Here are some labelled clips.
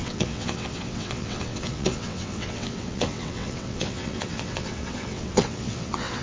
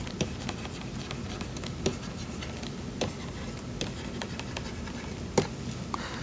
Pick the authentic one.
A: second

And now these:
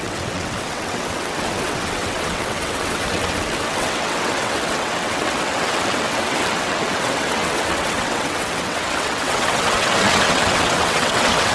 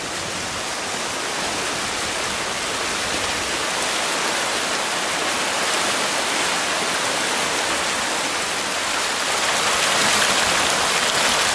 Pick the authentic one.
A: second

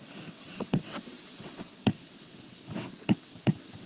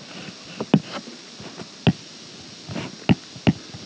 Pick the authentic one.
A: second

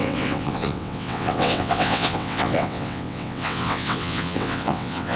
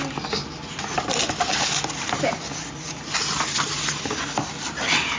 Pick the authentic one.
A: second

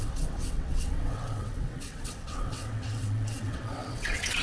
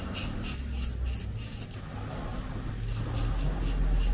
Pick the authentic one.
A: second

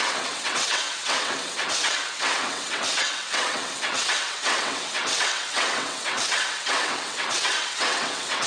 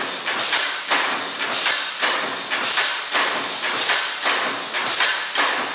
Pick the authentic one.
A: second